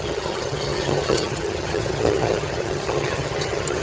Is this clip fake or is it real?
fake